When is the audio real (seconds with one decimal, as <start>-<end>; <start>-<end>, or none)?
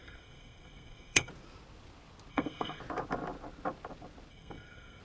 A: 1.3-2.3; 2.8-4.3